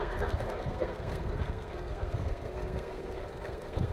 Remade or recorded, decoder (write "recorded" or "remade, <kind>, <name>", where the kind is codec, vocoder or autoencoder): remade, codec, SNAC